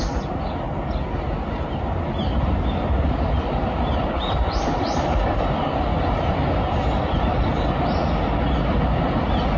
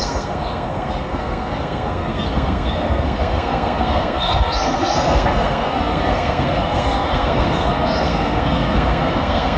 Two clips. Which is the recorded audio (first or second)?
first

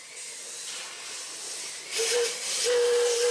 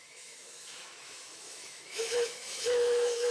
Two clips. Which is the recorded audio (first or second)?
first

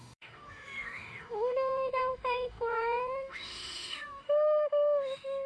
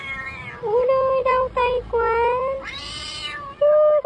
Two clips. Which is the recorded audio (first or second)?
second